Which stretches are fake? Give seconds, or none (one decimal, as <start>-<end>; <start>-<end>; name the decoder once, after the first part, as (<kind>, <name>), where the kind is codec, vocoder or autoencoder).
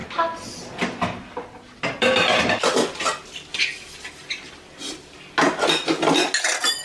none